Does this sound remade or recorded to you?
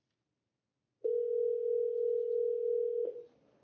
recorded